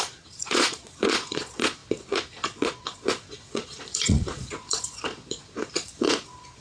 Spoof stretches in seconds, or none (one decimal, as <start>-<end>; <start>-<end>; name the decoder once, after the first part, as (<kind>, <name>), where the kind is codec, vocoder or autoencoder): 0.0-6.6 (vocoder, Vocos)